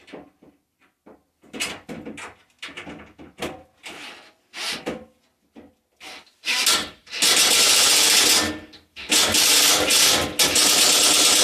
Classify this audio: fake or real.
real